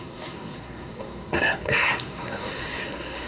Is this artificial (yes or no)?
yes